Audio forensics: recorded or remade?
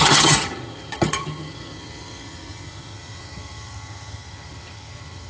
remade